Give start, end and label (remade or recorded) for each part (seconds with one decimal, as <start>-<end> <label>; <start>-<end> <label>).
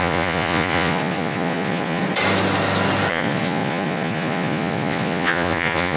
0.0-2.0 remade; 2.0-3.1 recorded; 3.1-6.0 remade